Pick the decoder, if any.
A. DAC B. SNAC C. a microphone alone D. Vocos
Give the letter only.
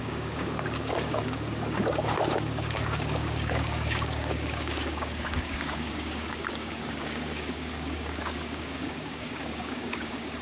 A